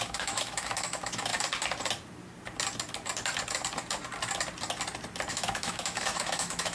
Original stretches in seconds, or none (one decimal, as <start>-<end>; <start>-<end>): 1.3-5.3